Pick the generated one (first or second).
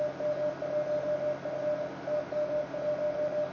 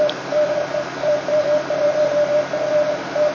second